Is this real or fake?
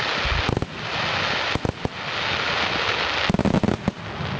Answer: real